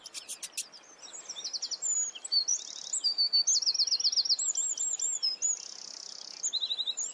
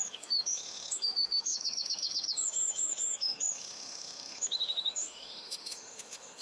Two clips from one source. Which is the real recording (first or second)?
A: first